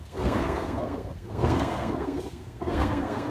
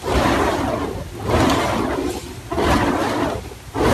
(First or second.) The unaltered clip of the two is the second